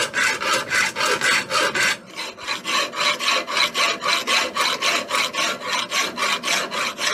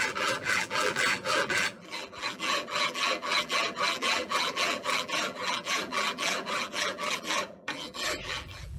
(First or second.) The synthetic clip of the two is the second